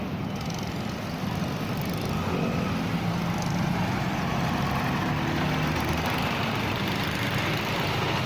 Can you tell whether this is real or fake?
real